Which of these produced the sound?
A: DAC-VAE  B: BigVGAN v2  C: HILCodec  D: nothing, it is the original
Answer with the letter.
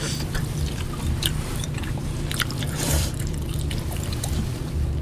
B